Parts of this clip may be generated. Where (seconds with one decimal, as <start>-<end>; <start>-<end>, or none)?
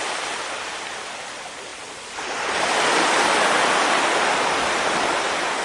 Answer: none